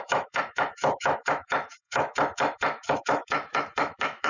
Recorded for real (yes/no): no